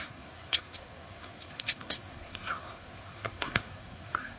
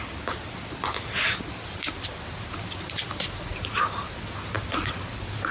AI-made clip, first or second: first